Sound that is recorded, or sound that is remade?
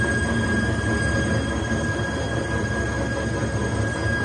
recorded